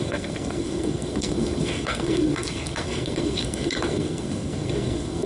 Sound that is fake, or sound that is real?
fake